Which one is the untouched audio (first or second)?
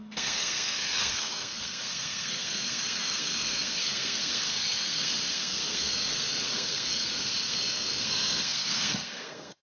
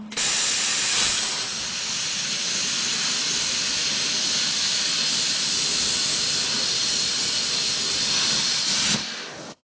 second